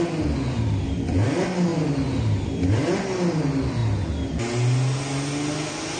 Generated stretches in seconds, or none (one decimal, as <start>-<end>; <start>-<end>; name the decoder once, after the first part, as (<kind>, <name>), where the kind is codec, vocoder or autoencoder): none